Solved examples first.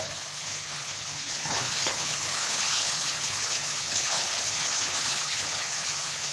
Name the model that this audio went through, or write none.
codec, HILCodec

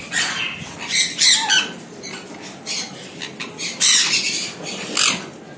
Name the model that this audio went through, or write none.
none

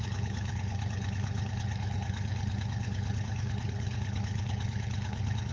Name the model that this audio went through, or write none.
codec, HILCodec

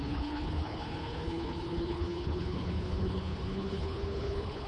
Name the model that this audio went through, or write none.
codec, HILCodec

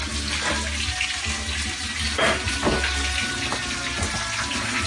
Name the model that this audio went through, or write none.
none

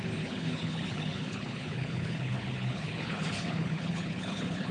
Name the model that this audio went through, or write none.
codec, HILCodec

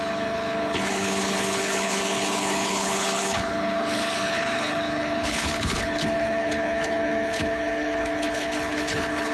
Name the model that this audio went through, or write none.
codec, HILCodec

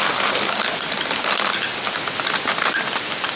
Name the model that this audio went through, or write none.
none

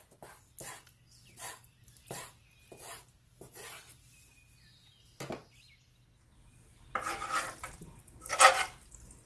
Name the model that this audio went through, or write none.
none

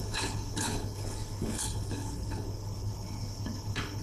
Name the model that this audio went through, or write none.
codec, HILCodec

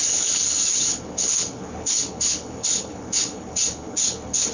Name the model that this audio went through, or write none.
codec, HILCodec